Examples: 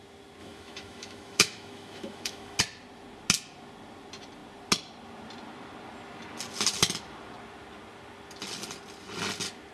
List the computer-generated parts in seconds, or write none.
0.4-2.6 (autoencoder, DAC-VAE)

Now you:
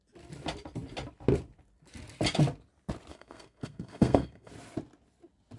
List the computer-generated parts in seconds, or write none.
3.1-4.5 (codec, SNAC)